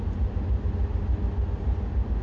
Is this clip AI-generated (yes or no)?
no